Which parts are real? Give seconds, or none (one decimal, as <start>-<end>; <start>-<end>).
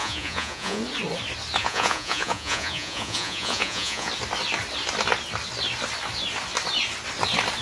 0.8-1.6; 4.1-7.6